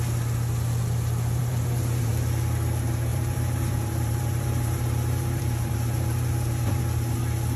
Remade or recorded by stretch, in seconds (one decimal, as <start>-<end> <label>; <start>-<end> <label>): 0.0-1.4 recorded; 1.4-2.1 remade; 2.1-3.1 recorded; 3.1-6.8 remade; 6.8-7.6 recorded